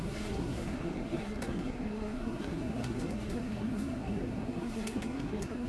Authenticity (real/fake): fake